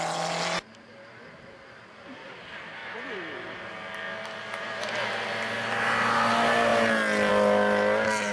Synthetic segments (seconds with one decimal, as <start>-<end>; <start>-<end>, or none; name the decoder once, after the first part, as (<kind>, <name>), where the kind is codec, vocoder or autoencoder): 2.8-3.7 (vocoder, BigVGAN v2)